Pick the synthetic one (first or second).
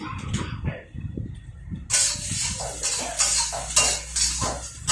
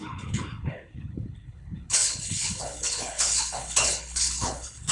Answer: second